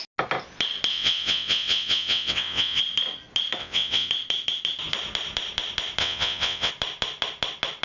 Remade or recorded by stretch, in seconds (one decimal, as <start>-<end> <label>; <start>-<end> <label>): 0.0-0.9 recorded; 0.9-2.8 remade; 2.8-3.6 recorded; 3.6-4.1 remade; 4.1-6.0 recorded; 6.0-6.7 remade; 6.7-7.8 recorded